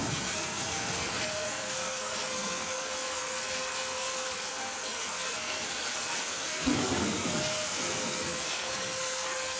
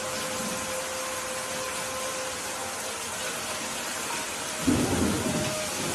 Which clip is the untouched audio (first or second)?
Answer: second